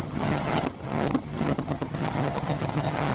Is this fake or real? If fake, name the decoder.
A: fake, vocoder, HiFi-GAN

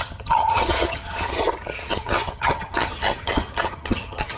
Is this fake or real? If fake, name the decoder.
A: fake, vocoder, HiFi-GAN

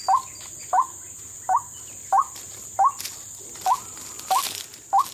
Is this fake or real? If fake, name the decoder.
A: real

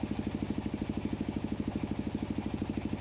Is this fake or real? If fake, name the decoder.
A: real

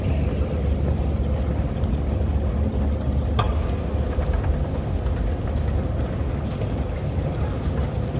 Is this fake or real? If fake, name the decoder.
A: real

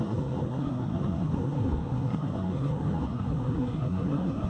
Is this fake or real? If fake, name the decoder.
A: fake, codec, SNAC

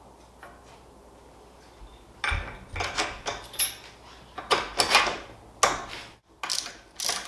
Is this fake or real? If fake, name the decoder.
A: real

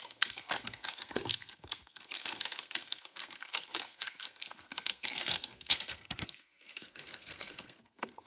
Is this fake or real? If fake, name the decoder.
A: fake, codec, SNAC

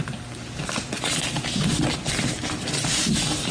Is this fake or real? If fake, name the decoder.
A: real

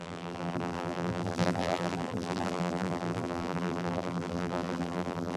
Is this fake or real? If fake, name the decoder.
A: fake, vocoder, BigVGAN v2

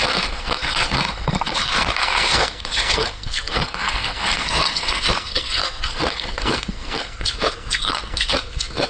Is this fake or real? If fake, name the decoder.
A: fake, codec, SNAC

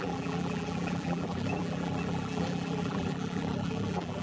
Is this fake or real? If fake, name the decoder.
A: fake, vocoder, BigVGAN v2